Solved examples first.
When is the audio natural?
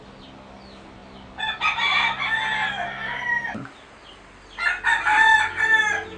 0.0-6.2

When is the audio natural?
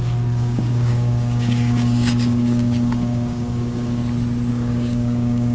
4.0-4.5